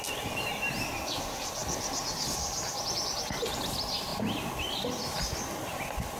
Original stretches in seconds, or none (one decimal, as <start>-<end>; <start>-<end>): 0.0-6.2